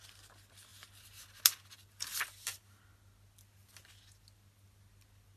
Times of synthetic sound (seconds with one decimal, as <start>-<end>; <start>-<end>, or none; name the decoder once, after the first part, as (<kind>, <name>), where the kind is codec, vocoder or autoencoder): none